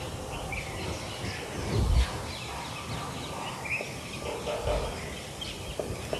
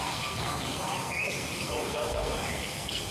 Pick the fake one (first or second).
second